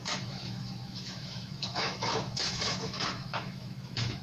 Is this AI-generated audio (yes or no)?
yes